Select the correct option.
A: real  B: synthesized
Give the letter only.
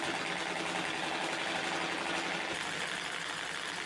A